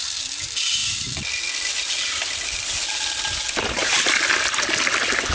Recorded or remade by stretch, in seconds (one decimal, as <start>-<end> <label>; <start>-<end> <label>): 0.0-5.3 recorded

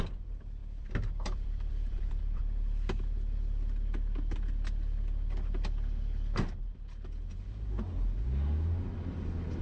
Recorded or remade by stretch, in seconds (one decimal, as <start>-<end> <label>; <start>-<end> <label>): 0.0-0.6 recorded; 0.6-2.4 remade; 2.4-9.6 recorded

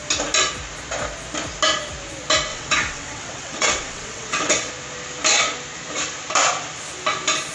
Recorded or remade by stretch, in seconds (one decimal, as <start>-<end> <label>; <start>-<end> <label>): 0.0-2.5 recorded; 2.5-4.7 remade; 4.7-7.5 recorded